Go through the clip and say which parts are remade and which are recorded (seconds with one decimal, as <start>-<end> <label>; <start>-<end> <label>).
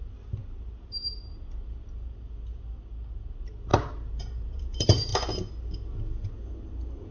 0.0-0.4 recorded; 0.4-1.3 remade; 1.3-3.7 recorded; 3.7-4.6 remade; 4.6-7.1 recorded